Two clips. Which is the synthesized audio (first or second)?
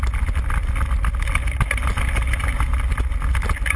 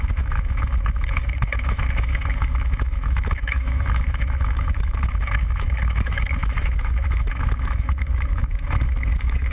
second